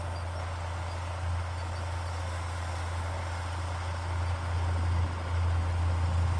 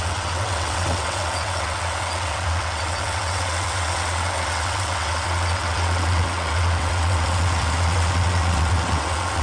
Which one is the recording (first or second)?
first